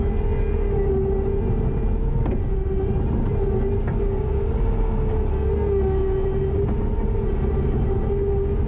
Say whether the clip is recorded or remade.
recorded